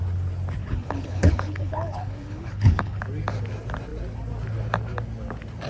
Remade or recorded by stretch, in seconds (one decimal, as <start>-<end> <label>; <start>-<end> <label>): 0.0-0.6 recorded; 0.6-3.0 remade; 3.0-5.7 recorded